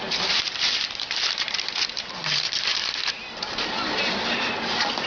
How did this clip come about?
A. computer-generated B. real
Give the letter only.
A